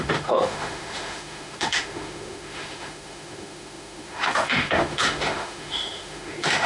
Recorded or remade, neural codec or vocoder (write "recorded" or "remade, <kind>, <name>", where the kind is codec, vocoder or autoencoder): remade, autoencoder, DAC-VAE